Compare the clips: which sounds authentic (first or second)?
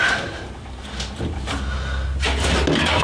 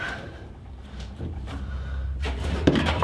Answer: first